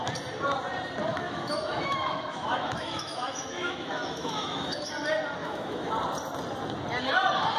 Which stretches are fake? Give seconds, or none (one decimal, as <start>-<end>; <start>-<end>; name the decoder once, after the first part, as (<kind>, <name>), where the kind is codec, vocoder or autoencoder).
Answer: 1.1-4.9 (autoencoder, DAC-VAE); 5.4-5.9